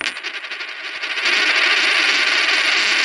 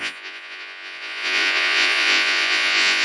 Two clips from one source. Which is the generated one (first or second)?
second